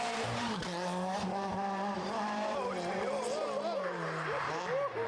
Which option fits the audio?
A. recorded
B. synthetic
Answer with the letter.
B